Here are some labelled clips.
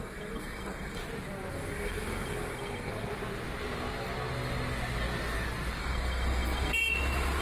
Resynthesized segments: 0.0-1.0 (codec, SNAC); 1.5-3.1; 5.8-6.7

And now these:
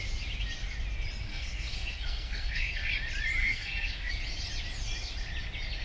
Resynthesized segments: 1.3-2.9 (codec, SNAC); 3.4-4.1

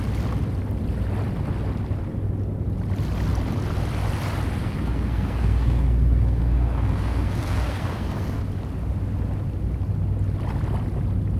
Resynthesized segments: 4.6-8.4 (codec, SNAC)

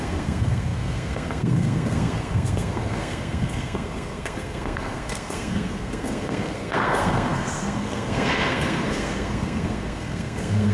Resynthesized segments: 0.0-10.7 (codec, SNAC)

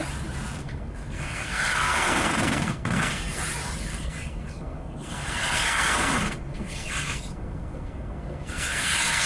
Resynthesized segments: 0.6-3.4 (codec, SNAC); 3.8-9.3

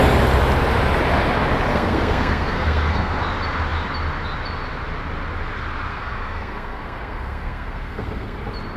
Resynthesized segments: 1.7-3.2 (codec, SNAC); 5.9-8.4